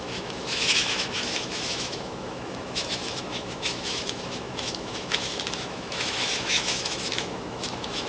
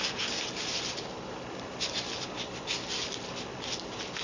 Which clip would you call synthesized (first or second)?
first